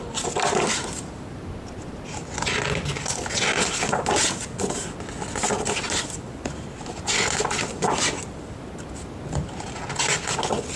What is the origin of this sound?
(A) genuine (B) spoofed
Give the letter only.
A